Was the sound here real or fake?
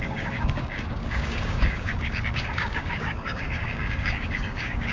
fake